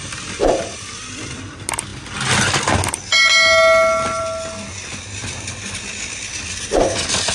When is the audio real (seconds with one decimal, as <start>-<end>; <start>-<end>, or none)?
0.0-7.3